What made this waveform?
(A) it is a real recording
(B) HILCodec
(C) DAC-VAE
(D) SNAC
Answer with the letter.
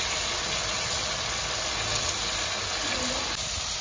A